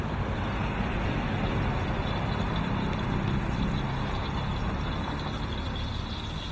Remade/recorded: recorded